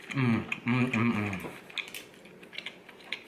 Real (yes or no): yes